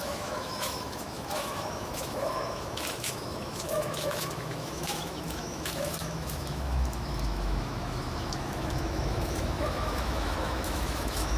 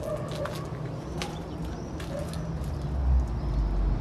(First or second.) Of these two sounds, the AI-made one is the first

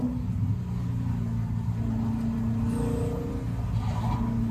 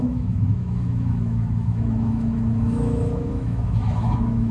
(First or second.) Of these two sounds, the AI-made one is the second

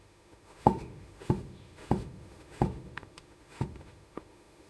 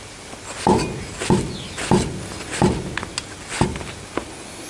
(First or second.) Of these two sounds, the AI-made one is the first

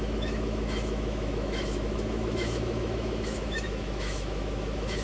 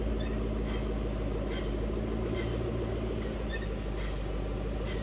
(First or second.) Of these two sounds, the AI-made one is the first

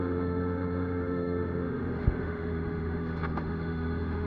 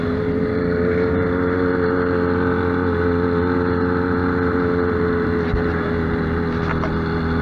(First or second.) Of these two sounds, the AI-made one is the first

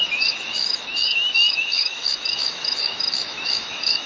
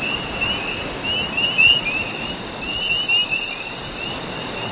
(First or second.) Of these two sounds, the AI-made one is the first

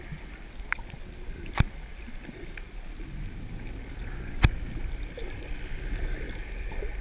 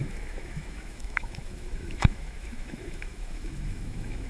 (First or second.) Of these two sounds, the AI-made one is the second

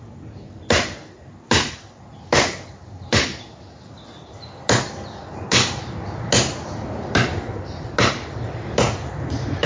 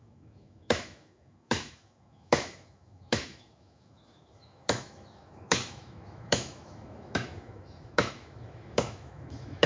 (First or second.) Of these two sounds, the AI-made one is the second